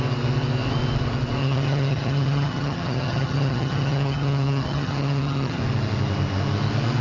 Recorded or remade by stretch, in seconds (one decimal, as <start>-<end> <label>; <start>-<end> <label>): 0.0-1.4 recorded; 1.4-5.6 remade; 5.6-7.0 recorded